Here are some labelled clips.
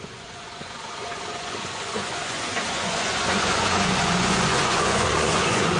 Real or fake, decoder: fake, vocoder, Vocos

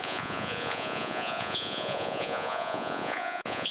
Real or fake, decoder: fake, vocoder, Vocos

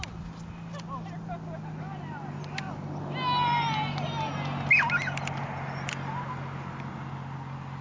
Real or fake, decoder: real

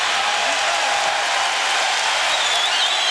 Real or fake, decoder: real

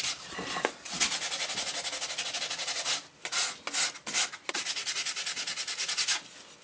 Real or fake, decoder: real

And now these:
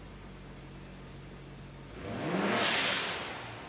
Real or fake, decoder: real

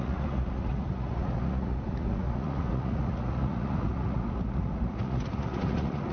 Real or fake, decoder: fake, vocoder, Vocos